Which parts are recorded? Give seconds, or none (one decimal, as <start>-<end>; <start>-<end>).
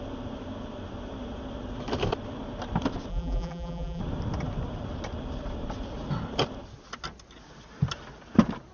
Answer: 0.0-3.1; 4.0-8.7